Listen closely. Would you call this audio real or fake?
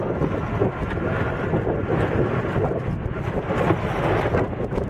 real